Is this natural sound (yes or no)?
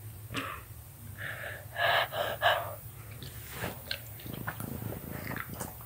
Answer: yes